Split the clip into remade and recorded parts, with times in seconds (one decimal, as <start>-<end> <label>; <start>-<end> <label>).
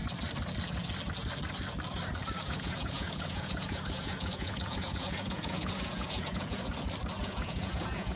0.0-2.4 recorded; 2.4-6.7 remade; 6.7-7.2 recorded; 7.2-8.2 remade